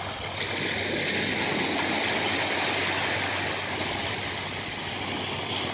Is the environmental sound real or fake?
real